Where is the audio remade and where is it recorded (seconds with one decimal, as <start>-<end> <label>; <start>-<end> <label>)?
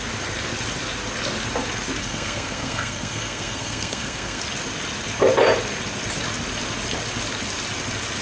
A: 0.0-2.0 recorded; 2.0-4.4 remade; 4.4-8.2 recorded